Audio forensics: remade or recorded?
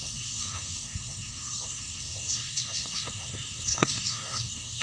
remade